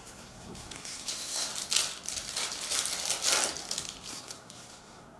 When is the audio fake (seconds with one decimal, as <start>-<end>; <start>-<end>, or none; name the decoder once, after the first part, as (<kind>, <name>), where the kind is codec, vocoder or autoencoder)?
0.0-1.5 (codec, SNAC); 4.1-5.2